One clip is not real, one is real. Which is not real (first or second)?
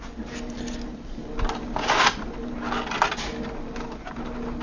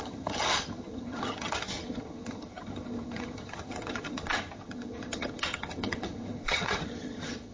second